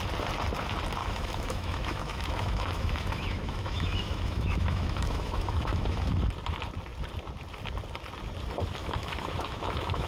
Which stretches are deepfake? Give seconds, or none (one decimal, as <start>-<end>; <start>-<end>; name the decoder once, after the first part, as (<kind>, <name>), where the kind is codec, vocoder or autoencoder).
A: 1.0-6.1 (autoencoder, DAC-VAE); 8.8-10.1